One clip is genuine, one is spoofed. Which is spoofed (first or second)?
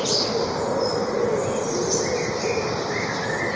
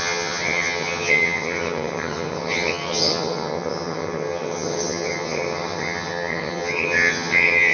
second